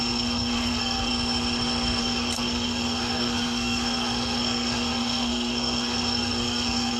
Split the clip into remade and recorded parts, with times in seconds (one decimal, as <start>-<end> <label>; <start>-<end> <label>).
0.0-1.1 remade; 1.1-2.0 recorded; 2.0-7.0 remade